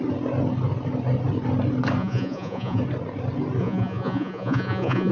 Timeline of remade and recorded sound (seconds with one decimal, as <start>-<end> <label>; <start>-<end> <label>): 0.0-2.0 recorded; 2.0-2.8 remade; 2.8-3.6 recorded; 3.6-5.1 remade